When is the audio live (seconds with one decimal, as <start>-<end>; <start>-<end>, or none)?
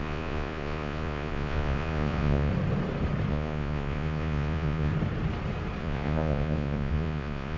2.5-3.3; 4.9-5.8